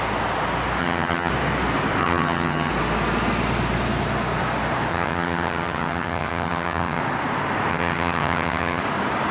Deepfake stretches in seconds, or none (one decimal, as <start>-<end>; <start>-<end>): 0.8-1.3; 2.0-2.7; 4.9-7.0; 7.7-8.8